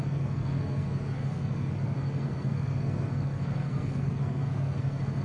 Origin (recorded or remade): remade